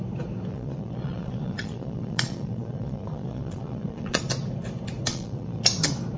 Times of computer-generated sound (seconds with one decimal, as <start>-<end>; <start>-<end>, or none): 0.5-4.2; 5.1-5.6

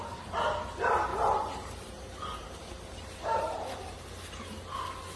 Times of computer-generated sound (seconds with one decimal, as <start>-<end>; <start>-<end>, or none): 1.1-2.7; 3.2-4.0

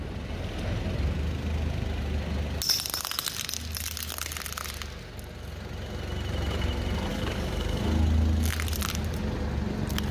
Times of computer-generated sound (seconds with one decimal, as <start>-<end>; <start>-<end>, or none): 7.1-7.8

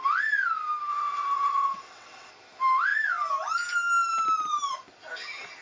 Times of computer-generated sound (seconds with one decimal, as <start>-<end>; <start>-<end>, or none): 0.9-2.3

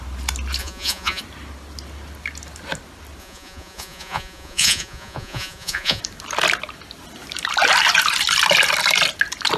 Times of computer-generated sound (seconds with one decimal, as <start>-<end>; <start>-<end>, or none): 0.6-1.2; 3.2-6.0

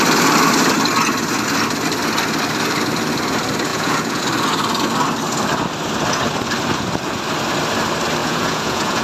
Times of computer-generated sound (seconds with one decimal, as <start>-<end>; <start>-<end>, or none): 3.7-4.2; 8.2-9.0